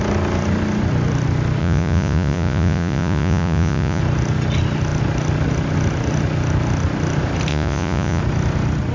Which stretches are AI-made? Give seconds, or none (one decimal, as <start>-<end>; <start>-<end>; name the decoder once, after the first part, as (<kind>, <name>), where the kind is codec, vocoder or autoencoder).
1.6-4.0 (vocoder, Vocos); 7.5-8.2